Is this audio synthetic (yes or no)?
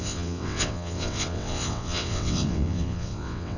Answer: yes